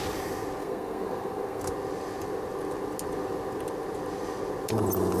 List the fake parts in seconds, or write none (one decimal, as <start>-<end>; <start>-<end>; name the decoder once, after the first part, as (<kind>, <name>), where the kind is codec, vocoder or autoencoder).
0.6-1.6 (codec, SNAC)